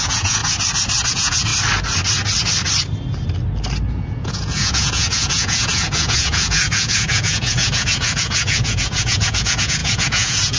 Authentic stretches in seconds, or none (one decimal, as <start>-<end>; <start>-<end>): 0.4-1.1; 1.5-3.9

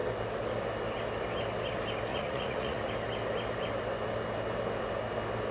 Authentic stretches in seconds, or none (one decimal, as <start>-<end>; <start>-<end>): 0.0-2.1; 2.9-5.5

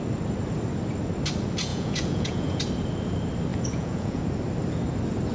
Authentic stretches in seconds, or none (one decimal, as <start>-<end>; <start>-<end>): 0.0-1.7; 2.6-3.5; 4.2-5.3

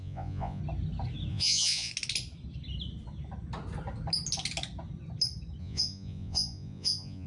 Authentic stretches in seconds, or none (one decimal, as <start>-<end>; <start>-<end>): 0.6-1.3; 1.9-5.6